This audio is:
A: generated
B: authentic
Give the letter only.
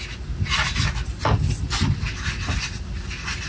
B